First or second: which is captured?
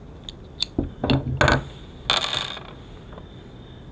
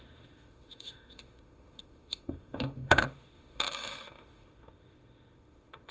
first